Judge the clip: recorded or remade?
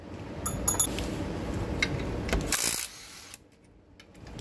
recorded